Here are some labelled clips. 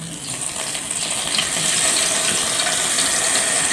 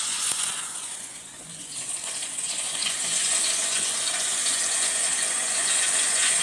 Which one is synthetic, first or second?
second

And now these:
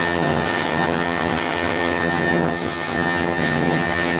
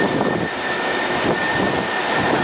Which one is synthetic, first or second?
first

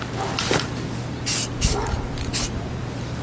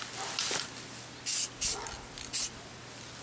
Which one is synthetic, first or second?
first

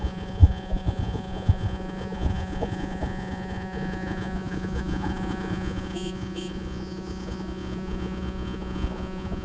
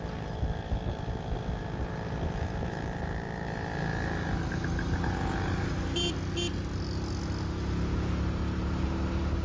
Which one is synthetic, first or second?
first